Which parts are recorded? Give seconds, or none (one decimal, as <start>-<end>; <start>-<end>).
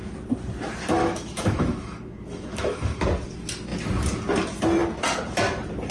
0.0-1.0; 3.0-5.9